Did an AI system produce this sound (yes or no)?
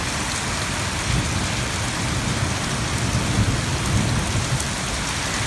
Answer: no